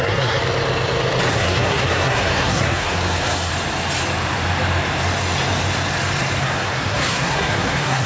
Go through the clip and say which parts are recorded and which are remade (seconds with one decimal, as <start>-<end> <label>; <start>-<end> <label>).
0.0-0.4 remade; 0.4-1.3 recorded; 1.3-3.5 remade; 3.5-6.4 recorded; 6.4-8.1 remade